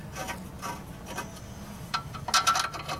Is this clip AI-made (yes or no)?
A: no